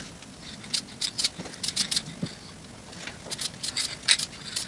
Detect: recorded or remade recorded